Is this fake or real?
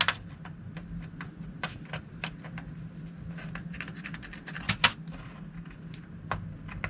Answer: real